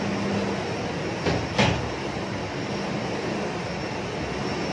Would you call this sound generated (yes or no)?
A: no